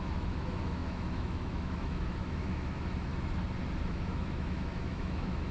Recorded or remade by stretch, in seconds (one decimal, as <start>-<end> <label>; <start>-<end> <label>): 0.0-3.1 remade; 3.1-3.8 recorded; 3.8-5.5 remade